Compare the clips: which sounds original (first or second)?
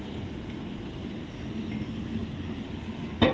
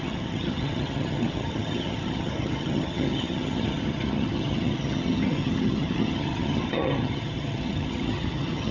first